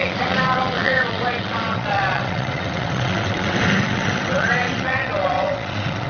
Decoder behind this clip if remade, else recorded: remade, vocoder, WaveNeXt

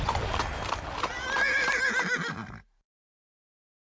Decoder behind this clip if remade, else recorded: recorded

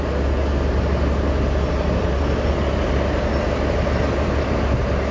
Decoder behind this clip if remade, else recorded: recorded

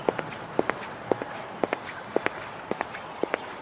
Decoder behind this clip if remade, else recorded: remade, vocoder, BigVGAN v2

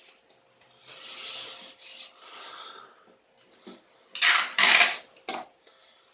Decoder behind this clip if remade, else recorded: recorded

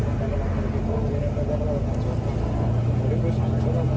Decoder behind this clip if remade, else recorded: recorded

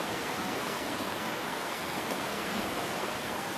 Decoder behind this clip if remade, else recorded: remade, codec, SNAC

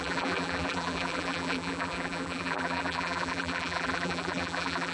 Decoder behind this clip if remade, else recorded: remade, vocoder, BigVGAN v2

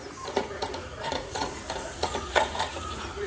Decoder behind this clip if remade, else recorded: remade, vocoder, Vocos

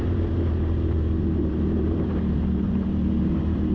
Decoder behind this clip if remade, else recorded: remade, vocoder, BigVGAN v2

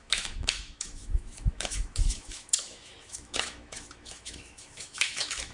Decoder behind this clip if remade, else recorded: remade, autoencoder, DAC-VAE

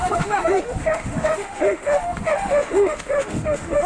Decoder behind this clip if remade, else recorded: remade, autoencoder, DAC-VAE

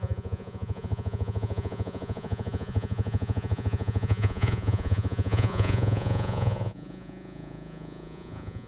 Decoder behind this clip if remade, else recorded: remade, vocoder, Vocos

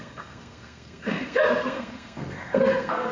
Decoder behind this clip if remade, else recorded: remade, codec, SNAC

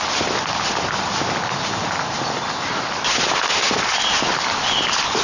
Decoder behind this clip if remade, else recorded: recorded